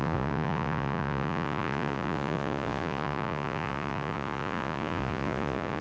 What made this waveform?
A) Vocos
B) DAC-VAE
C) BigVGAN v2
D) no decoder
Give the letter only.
A